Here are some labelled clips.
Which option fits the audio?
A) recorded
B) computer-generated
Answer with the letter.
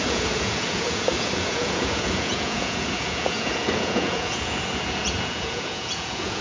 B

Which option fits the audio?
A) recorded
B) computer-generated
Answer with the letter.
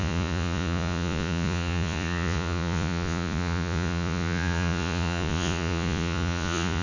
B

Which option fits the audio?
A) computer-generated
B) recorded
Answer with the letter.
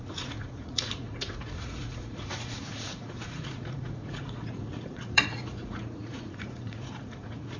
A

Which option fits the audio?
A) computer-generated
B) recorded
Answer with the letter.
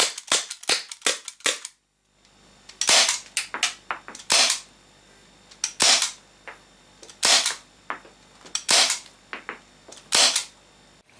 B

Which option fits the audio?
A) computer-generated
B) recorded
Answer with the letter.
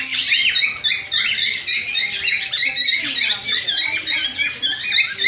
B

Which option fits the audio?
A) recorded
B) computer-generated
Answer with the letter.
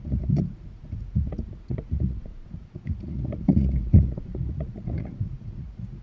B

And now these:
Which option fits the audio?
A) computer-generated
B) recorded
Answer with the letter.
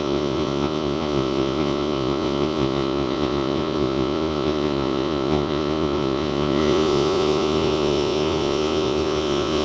A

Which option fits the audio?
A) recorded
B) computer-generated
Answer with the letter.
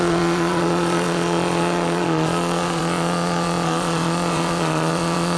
B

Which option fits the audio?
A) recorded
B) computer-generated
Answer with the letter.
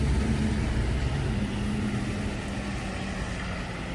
A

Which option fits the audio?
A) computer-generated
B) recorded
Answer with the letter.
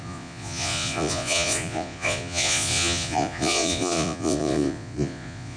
A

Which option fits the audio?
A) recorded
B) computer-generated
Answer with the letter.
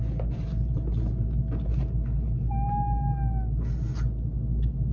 A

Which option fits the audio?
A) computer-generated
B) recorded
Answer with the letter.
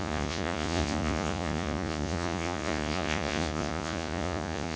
A